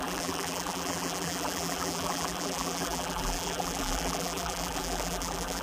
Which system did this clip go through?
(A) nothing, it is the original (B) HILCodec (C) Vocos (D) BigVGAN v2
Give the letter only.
D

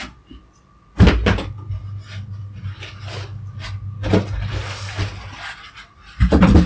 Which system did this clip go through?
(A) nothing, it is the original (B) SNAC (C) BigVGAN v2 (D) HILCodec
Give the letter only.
A